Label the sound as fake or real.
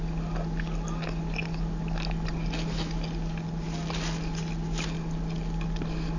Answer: real